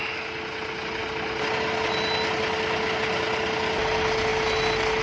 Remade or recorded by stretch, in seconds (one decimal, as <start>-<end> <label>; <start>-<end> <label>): 0.0-5.0 recorded